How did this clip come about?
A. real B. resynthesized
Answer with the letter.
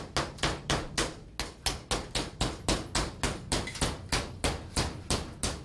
A